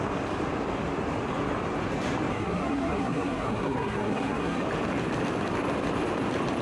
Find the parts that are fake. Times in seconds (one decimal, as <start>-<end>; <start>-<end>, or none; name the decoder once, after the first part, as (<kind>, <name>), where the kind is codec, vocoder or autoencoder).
2.3-4.6 (codec, SNAC)